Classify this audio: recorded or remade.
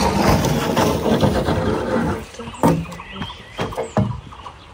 recorded